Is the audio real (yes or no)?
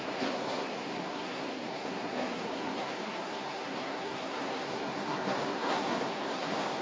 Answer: no